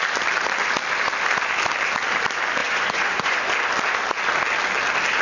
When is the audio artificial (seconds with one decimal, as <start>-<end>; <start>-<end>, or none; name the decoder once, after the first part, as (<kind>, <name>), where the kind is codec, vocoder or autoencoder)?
2.6-3.5 (vocoder, Vocos)